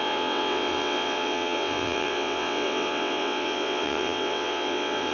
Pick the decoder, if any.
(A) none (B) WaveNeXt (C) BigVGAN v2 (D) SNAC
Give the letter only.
B